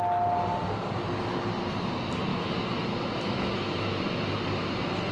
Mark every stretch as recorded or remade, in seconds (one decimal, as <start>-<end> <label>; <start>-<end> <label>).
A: 0.0-2.3 recorded; 2.3-4.0 remade; 4.0-5.1 recorded